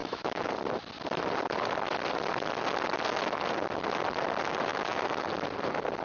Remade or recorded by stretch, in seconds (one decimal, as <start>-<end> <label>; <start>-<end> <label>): 0.0-0.5 remade; 0.5-4.7 recorded; 4.7-5.3 remade; 5.3-6.0 recorded